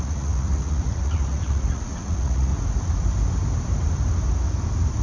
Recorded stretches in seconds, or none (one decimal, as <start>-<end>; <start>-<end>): 2.5-5.0